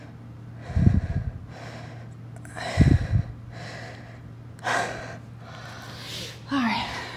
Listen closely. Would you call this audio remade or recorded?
recorded